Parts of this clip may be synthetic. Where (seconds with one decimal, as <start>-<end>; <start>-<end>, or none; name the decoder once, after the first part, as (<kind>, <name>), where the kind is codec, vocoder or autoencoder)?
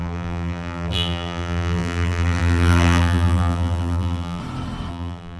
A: 0.0-4.4 (vocoder, BigVGAN v2); 4.9-5.4